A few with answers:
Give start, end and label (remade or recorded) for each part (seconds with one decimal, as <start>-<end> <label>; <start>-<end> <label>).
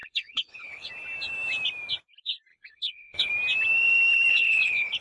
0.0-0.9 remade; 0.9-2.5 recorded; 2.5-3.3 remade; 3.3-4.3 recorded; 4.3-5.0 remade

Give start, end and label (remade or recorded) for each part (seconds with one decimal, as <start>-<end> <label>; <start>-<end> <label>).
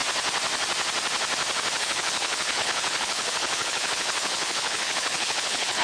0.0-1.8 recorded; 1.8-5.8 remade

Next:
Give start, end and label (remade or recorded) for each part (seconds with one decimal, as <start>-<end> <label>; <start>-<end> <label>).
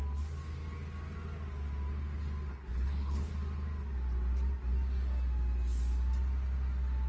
0.0-2.5 recorded; 2.5-3.3 remade; 3.3-7.1 recorded